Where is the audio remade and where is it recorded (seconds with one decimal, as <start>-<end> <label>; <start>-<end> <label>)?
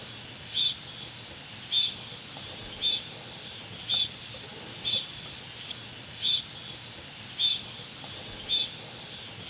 0.0-9.5 recorded